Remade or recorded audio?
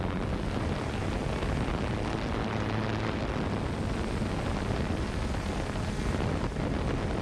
recorded